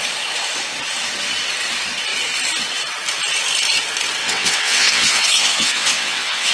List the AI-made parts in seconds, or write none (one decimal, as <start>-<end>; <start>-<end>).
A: 4.2-6.5